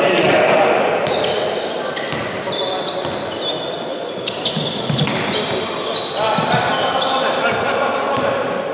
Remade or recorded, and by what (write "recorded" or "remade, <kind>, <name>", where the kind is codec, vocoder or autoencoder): recorded